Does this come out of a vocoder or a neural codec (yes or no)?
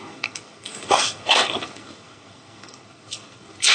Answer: yes